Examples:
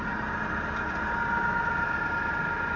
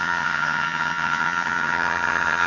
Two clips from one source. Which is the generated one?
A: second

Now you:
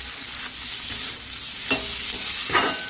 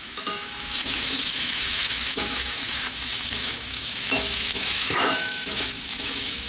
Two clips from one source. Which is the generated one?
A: second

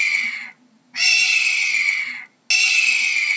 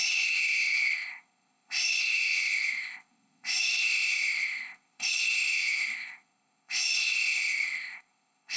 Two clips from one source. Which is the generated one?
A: second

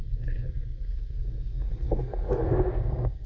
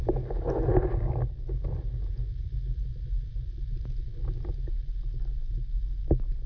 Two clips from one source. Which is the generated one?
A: first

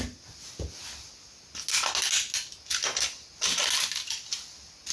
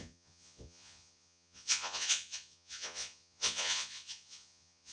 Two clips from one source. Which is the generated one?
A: second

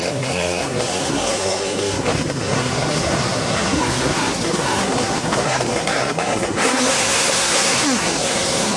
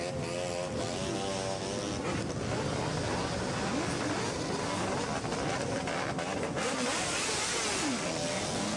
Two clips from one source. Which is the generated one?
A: first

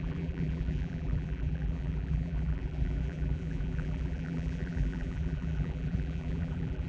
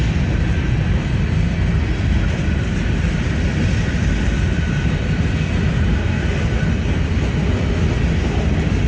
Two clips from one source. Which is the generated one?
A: first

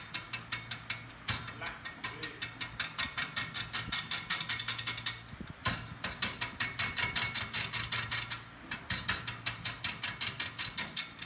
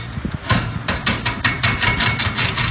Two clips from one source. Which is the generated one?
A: second